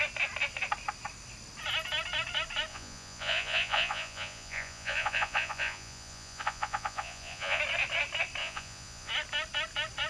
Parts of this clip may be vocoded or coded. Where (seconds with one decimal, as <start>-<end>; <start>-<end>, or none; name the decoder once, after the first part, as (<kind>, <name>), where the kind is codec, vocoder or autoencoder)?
2.7-7.6 (vocoder, Vocos); 8.4-9.1